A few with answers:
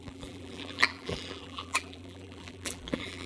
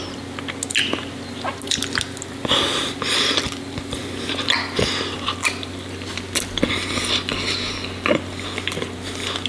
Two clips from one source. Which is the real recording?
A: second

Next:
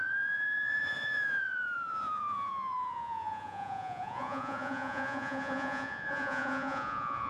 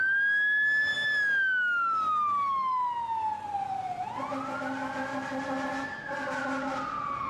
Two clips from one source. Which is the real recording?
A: second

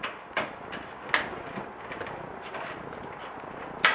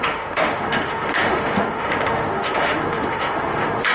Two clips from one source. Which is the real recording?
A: first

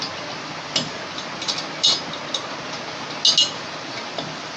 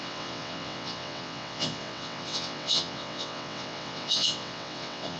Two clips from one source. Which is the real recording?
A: first